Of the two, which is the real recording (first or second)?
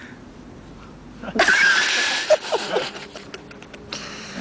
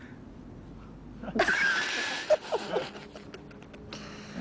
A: second